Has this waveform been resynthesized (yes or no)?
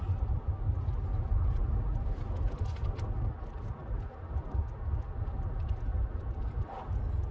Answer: no